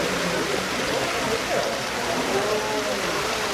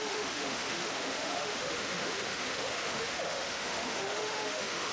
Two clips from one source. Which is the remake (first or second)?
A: second